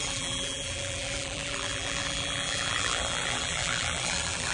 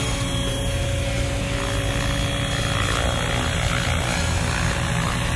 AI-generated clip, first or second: first